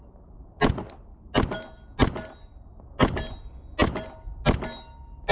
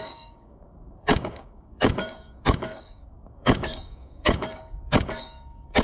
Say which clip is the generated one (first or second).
second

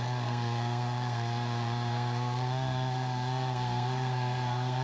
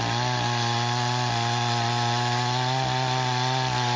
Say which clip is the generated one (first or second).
first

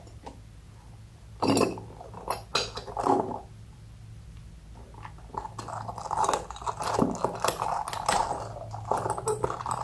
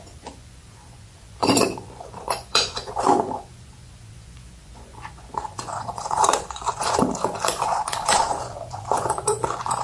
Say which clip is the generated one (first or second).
second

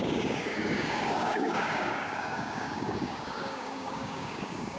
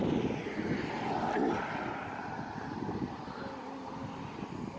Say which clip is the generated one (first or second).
first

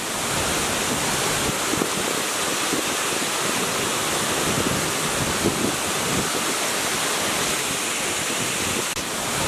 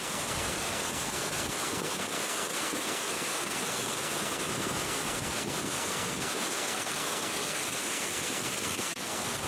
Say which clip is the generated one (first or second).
second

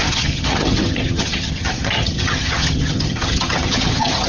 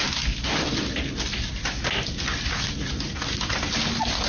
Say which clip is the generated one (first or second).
first